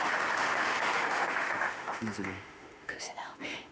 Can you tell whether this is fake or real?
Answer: fake